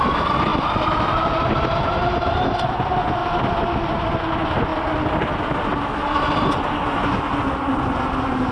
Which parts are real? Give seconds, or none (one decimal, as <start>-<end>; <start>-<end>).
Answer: 0.0-0.5; 1.3-3.2; 3.9-8.5